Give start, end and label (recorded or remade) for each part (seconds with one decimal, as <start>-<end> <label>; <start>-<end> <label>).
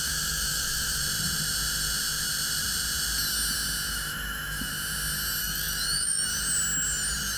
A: 0.0-1.0 remade; 1.0-3.9 recorded; 3.9-4.7 remade; 4.7-5.4 recorded; 5.4-6.3 remade; 6.3-7.4 recorded